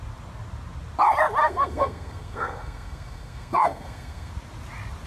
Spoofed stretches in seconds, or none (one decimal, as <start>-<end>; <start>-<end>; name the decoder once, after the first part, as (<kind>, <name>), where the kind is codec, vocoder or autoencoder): 1.4-4.3 (codec, SNAC)